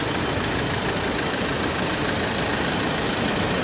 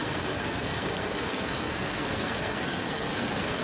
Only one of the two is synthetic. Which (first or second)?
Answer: second